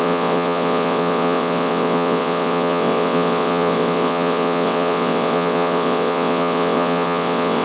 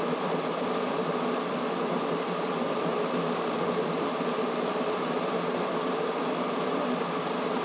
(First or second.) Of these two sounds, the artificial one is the first